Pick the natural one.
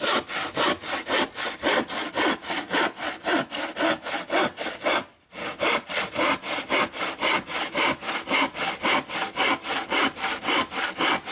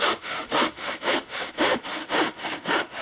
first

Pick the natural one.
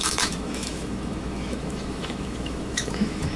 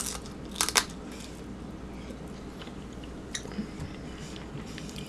second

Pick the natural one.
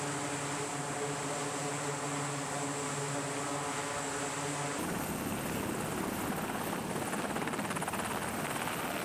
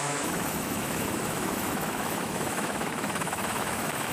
first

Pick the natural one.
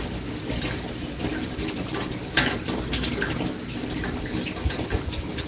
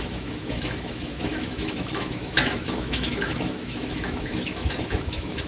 first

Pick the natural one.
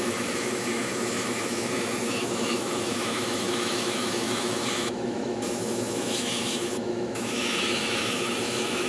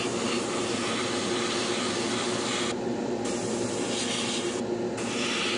second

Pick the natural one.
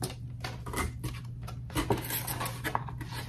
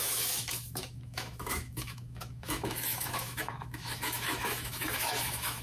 first